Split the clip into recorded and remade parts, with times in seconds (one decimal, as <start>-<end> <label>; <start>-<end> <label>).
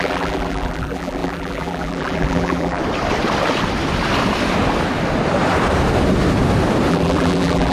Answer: 0.0-2.8 remade; 2.8-6.9 recorded; 6.9-7.7 remade